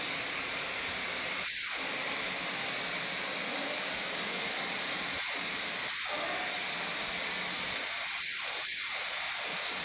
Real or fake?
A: real